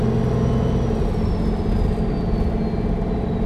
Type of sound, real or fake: real